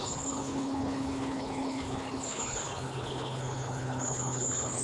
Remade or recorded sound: remade